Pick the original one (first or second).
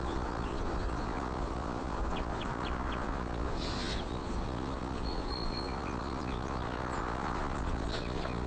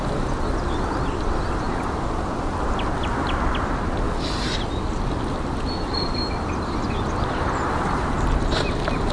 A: second